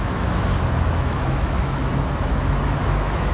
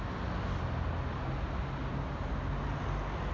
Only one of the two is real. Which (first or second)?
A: second